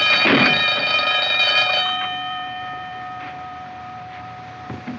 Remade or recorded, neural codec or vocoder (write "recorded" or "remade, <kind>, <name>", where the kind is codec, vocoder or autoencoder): recorded